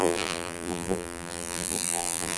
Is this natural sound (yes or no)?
no